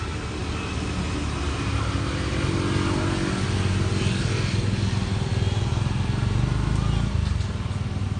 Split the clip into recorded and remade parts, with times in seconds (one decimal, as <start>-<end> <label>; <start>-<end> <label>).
0.0-8.2 recorded